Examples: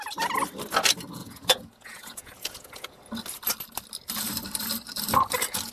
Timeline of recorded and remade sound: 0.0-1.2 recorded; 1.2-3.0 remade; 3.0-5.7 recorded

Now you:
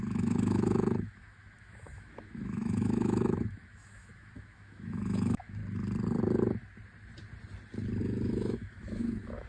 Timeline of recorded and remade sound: 0.0-5.6 remade; 5.6-8.0 recorded; 8.0-9.5 remade

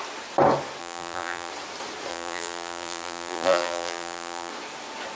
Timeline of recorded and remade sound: 0.0-0.8 recorded; 0.8-1.5 remade; 1.5-2.1 recorded; 2.1-4.5 remade; 4.5-5.2 recorded

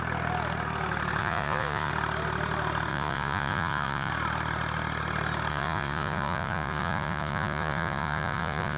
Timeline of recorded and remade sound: 0.0-1.2 recorded; 1.2-1.9 remade; 1.9-2.9 recorded; 2.9-4.1 remade; 4.1-5.5 recorded; 5.5-8.8 remade

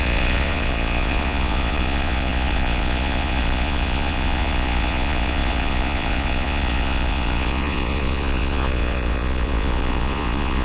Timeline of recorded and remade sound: 0.0-10.6 remade